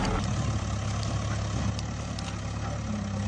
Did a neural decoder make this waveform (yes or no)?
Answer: no